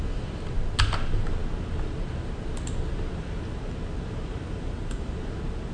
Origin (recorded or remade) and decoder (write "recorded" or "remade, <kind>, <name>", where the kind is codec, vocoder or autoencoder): recorded